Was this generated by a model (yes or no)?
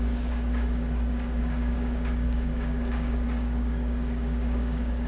yes